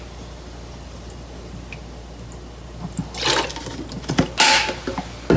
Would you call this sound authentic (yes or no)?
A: yes